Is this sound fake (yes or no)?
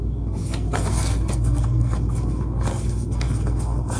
yes